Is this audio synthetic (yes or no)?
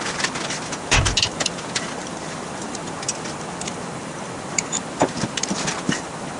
yes